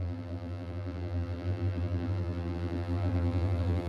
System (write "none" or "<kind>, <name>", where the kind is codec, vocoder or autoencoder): vocoder, BigVGAN v2